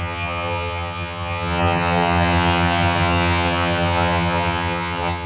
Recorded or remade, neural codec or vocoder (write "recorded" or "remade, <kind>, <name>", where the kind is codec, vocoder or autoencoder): remade, vocoder, HiFi-GAN